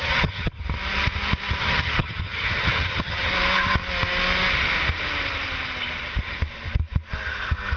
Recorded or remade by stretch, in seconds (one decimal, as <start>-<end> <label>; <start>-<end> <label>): 0.0-0.6 remade; 0.6-1.6 recorded; 1.6-3.3 remade; 3.3-7.8 recorded